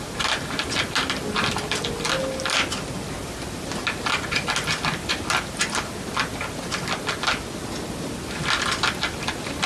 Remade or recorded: recorded